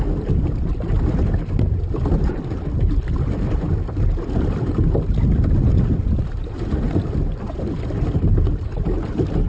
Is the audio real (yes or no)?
yes